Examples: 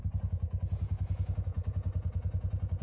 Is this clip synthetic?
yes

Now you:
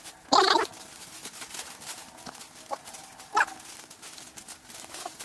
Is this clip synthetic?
no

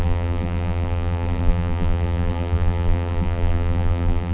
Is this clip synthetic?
yes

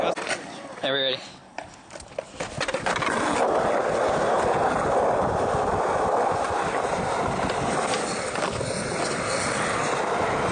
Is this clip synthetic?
no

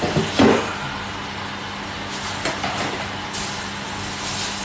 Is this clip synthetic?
no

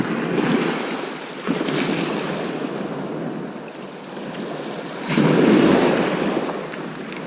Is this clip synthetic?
no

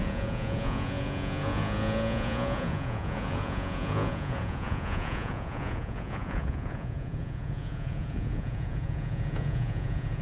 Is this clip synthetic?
yes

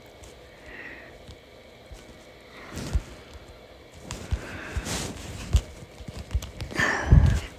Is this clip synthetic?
no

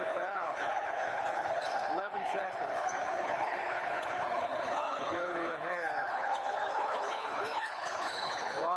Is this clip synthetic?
yes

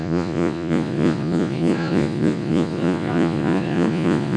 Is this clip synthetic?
yes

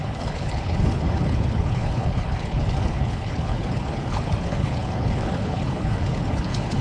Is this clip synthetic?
yes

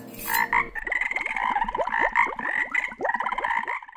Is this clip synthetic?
no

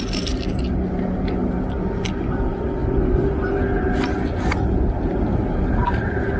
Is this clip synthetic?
no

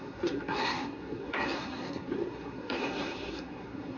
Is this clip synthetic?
yes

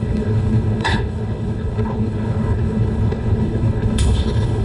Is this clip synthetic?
yes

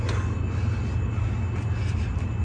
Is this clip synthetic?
no